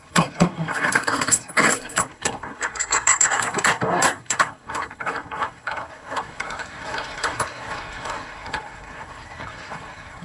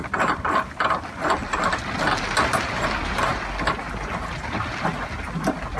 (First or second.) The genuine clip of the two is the second